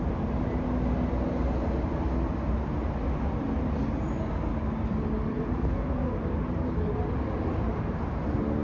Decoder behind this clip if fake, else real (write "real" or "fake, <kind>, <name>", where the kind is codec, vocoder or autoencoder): real